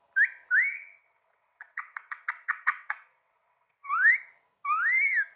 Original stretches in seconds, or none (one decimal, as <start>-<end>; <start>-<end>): 0.0-0.7; 3.9-5.4